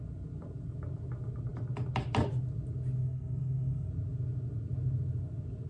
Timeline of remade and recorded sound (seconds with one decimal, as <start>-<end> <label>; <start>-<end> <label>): 0.0-3.0 recorded; 3.0-3.9 remade; 3.9-5.7 recorded